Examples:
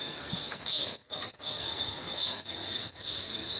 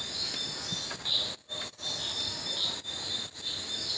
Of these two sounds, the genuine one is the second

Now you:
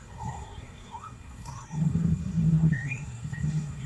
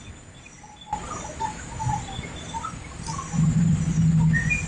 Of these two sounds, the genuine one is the second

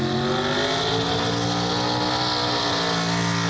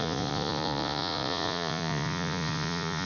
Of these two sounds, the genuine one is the first